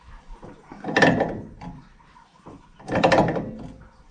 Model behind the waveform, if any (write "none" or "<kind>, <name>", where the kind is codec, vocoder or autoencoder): none